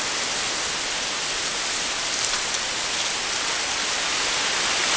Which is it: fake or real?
real